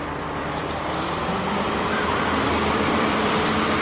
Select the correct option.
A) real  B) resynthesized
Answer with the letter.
B